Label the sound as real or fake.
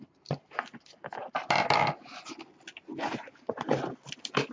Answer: real